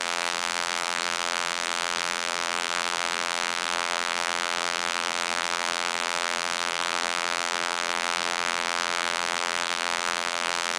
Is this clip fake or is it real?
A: fake